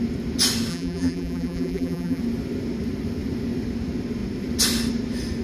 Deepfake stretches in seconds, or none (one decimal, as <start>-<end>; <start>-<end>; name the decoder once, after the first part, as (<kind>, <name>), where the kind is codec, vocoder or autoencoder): 0.7-2.2 (vocoder, BigVGAN v2)